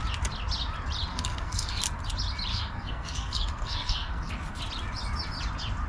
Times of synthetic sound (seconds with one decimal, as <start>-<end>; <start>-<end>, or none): 1.1-1.8; 2.5-4.6